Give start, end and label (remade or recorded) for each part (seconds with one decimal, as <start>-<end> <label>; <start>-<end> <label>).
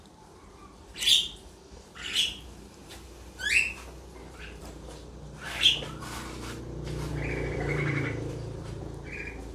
0.0-0.6 recorded; 0.6-3.5 remade; 3.5-4.2 recorded; 4.2-6.6 remade; 6.6-7.1 recorded; 7.1-8.8 remade; 8.8-9.5 recorded